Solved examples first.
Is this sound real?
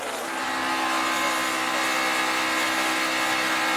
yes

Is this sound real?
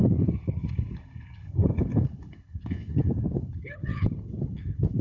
no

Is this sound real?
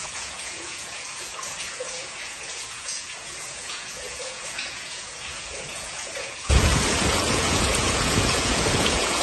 no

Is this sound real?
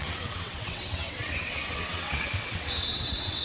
no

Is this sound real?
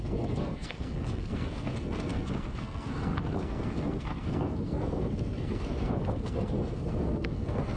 no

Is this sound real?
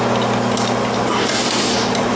yes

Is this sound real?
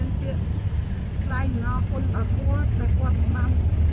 yes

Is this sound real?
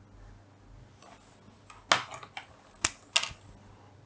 yes